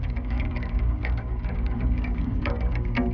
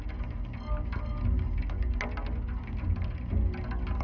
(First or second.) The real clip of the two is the second